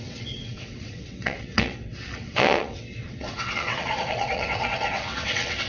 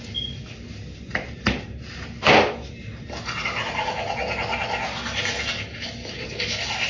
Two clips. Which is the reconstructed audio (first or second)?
first